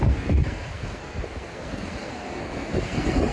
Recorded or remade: remade